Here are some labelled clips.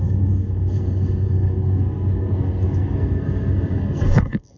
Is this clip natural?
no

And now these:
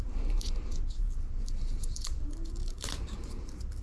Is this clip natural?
no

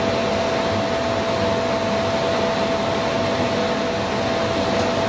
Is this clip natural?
yes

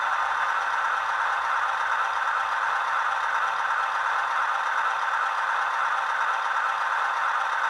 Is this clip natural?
yes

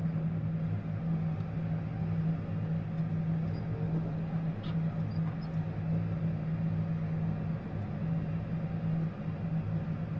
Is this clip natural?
yes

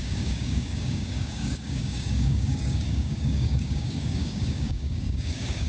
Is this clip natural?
no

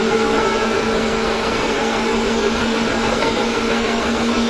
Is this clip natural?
no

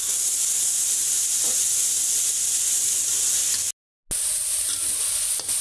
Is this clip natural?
yes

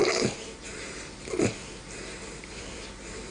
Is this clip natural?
no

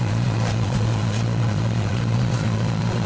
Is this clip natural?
no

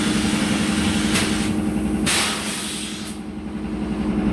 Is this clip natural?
yes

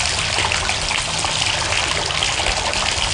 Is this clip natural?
yes